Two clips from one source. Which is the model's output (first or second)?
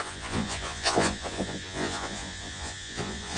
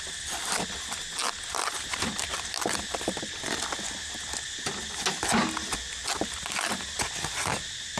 first